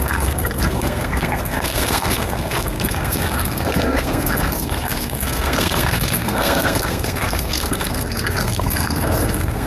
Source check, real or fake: fake